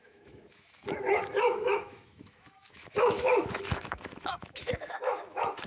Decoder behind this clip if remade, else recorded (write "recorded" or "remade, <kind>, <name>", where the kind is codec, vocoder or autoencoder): remade, autoencoder, DAC-VAE